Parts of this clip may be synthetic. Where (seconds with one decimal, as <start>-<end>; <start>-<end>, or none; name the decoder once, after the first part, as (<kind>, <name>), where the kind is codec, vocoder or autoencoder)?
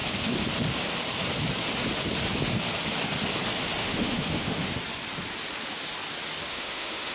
3.8-4.7 (autoencoder, DAC-VAE); 6.5-7.1